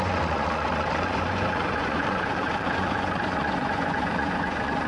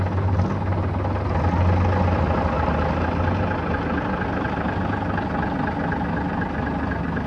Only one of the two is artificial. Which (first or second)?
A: first